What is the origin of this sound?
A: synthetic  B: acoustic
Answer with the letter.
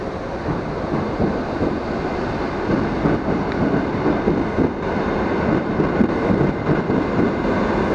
B